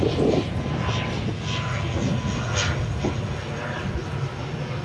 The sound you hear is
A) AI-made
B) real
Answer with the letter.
B